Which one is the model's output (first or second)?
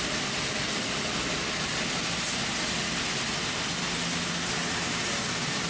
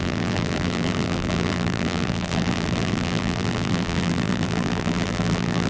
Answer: second